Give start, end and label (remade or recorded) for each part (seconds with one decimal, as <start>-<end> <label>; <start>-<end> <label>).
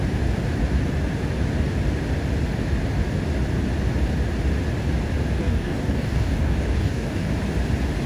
0.0-5.4 recorded; 5.4-7.3 remade; 7.3-8.1 recorded